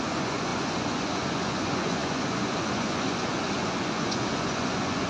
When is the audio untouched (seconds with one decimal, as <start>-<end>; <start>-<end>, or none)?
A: none